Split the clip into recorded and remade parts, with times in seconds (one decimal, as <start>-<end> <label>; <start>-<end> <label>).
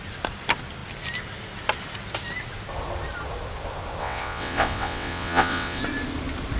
0.0-4.0 recorded; 4.0-5.8 remade; 5.8-6.6 recorded